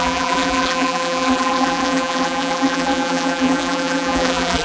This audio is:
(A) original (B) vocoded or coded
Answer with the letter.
B